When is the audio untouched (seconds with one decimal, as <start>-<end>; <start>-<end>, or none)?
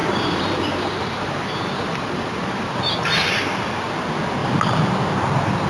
3.4-5.7